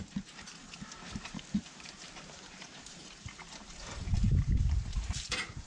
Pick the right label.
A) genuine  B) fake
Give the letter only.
B